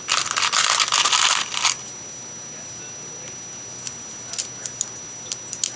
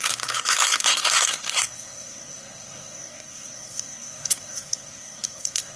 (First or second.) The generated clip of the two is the second